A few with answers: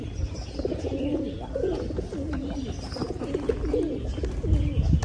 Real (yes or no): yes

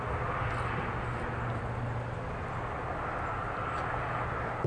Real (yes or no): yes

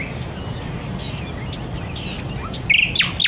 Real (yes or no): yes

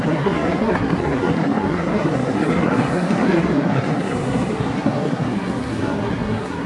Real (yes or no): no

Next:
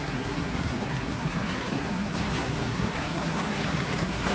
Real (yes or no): no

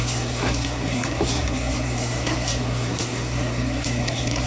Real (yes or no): no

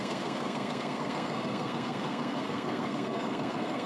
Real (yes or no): no